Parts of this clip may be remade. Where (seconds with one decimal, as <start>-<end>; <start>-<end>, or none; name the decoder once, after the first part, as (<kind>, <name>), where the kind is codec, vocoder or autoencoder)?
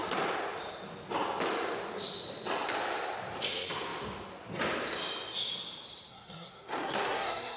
6.1-7.6 (codec, SNAC)